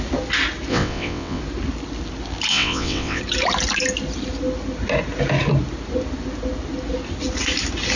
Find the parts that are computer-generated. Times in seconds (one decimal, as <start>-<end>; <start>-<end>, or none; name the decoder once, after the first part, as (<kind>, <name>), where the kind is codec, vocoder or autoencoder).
0.7-1.4 (vocoder, WaveNeXt); 2.5-3.2